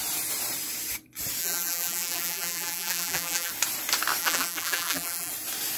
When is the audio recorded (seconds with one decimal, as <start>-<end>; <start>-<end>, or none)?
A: 0.0-1.4; 3.5-4.2; 5.3-5.8